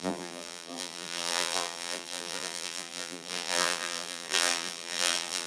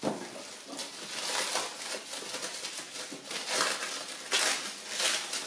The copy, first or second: first